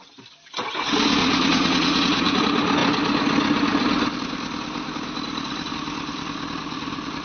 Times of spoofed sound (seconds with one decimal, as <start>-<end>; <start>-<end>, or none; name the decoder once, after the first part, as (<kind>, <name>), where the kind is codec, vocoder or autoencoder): 1.2-2.4 (vocoder, Vocos)